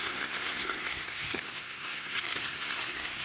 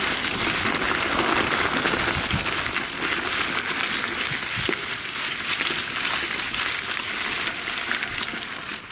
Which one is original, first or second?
second